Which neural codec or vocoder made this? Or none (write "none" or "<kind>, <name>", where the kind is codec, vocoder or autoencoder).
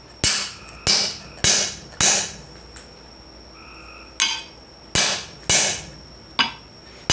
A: none